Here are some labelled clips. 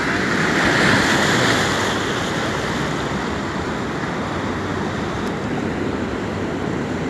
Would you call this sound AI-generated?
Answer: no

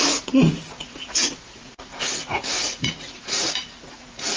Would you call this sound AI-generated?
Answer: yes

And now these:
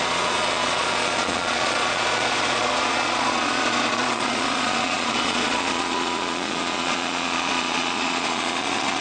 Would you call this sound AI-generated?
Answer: yes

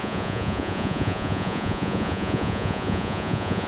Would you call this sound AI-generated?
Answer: yes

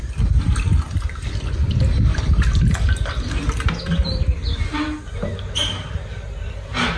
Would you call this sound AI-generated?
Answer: no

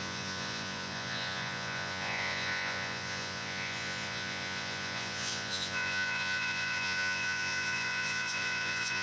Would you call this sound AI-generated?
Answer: yes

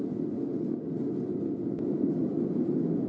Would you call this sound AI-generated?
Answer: no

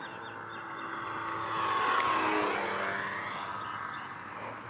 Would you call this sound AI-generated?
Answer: no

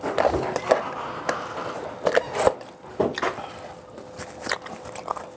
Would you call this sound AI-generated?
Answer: no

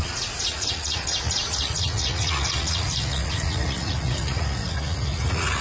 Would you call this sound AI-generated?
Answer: yes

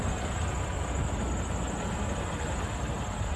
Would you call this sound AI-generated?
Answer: no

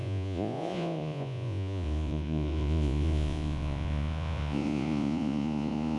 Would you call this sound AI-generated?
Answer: yes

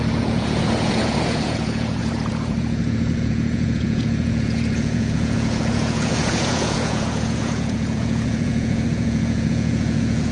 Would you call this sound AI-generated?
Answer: yes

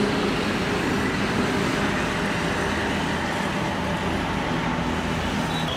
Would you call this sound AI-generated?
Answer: no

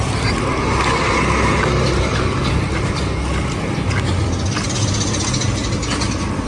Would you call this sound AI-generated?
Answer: no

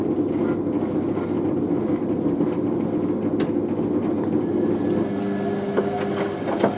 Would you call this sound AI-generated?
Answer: no